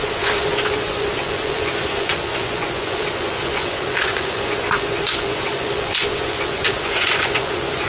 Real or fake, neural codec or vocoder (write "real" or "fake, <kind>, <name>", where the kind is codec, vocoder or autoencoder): fake, vocoder, Vocos